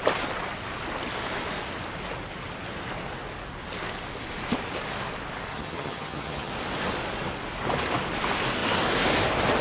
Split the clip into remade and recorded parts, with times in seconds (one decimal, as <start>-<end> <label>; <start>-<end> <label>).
0.0-5.5 recorded; 5.5-6.5 remade; 6.5-9.6 recorded